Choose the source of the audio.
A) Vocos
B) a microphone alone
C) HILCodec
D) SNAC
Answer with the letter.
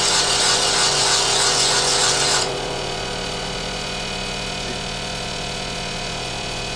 A